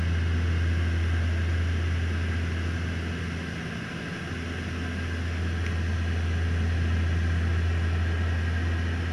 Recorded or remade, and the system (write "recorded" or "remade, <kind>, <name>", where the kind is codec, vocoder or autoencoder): recorded